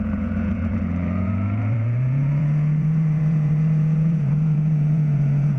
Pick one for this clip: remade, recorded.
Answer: remade